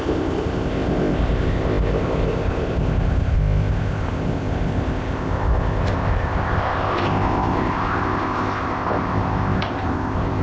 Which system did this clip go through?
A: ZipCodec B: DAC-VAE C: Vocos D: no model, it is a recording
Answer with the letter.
A